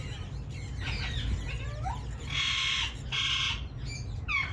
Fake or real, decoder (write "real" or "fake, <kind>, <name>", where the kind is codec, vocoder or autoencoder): real